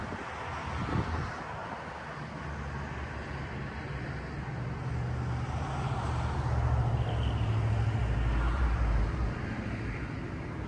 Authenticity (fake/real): real